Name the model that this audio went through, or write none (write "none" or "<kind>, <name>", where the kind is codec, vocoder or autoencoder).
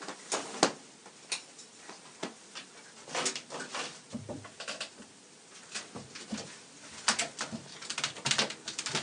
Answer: vocoder, BigVGAN v2